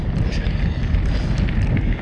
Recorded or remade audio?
recorded